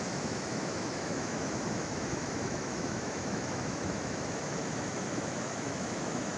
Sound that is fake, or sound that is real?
fake